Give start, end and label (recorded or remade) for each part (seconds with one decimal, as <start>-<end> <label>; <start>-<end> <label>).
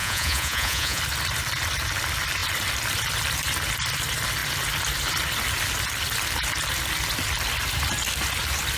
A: 0.0-1.0 remade; 1.0-8.8 recorded